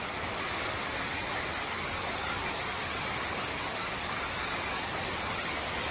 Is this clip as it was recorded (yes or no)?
no